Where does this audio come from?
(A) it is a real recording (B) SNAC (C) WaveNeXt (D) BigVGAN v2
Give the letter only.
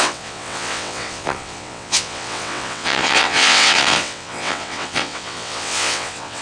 C